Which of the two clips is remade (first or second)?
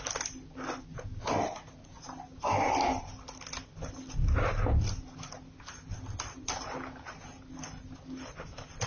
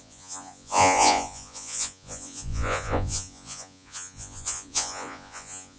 second